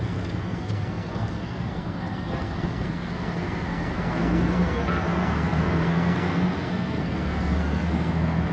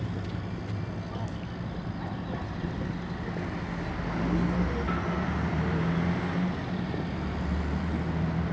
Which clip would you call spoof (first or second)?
first